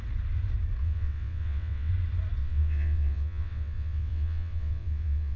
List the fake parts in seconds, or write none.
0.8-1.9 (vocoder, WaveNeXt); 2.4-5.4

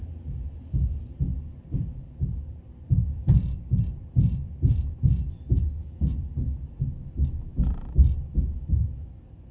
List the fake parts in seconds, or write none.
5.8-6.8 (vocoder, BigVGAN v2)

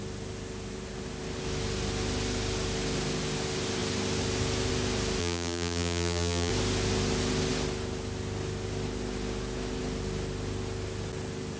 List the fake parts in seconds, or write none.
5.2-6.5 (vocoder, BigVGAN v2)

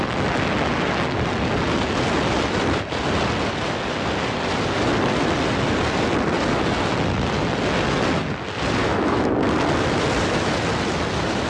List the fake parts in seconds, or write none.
8.8-9.3 (autoencoder, DAC-VAE)

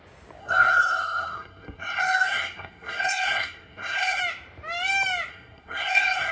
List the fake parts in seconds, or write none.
0.4-4.2 (codec, SNAC); 5.3-6.3

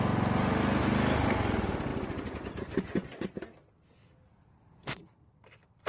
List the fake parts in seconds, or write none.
none